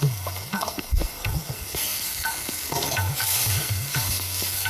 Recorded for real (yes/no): no